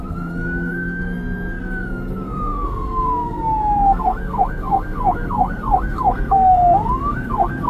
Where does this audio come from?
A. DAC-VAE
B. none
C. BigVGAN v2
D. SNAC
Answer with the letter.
D